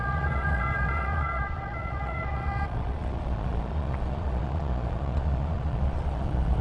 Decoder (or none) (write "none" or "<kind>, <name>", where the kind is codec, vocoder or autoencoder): vocoder, Vocos